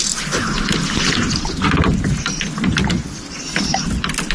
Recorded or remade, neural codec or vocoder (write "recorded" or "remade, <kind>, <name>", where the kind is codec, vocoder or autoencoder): recorded